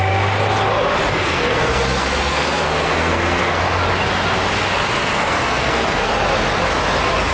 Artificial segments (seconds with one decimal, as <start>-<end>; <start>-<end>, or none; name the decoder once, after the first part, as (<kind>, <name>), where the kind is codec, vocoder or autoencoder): 1.1-3.6 (codec, SNAC); 5.0-6.1